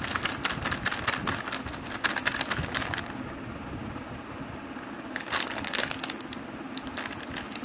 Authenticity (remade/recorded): recorded